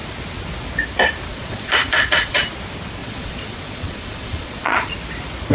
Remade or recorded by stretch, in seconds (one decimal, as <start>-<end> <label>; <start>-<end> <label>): 0.0-1.3 recorded; 1.3-2.4 remade; 2.4-3.0 recorded; 3.0-4.9 remade; 4.9-5.5 recorded

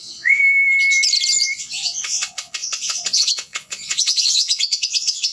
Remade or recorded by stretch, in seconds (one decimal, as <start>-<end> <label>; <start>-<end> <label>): 0.0-0.4 remade; 0.4-1.6 recorded; 1.6-5.3 remade